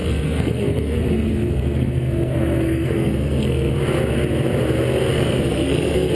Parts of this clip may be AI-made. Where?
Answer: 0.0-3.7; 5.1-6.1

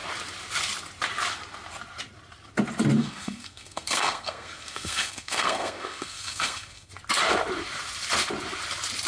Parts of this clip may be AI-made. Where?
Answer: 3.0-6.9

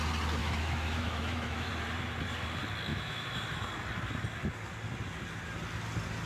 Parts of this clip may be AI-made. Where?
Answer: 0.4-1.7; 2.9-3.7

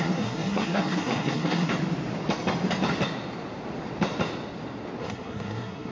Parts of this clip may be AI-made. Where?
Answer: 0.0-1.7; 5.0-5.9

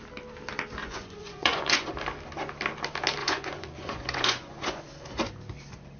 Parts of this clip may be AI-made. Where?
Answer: 0.8-1.9; 3.2-4.8